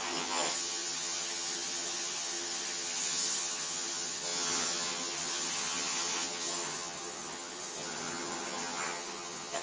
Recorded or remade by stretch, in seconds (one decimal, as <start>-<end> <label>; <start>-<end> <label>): 0.0-9.6 remade